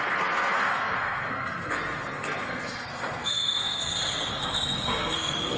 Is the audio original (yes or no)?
no